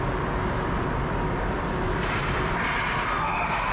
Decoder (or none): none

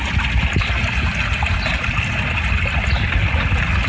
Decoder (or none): none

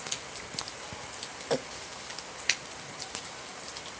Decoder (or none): none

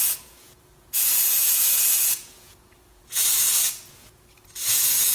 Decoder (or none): vocoder, Vocos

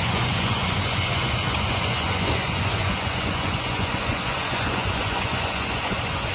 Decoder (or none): vocoder, Vocos